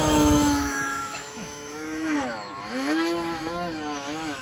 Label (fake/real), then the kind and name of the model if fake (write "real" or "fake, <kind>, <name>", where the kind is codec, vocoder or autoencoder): fake, autoencoder, DAC-VAE